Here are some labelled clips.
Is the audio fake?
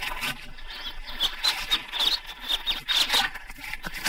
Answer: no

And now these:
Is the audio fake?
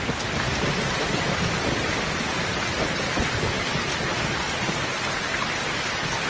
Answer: no